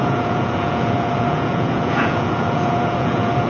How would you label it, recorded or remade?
remade